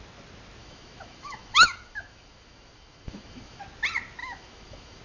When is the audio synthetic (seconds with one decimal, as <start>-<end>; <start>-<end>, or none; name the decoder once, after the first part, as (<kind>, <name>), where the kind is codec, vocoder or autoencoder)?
0.6-3.6 (autoencoder, DAC-VAE); 4.2-5.0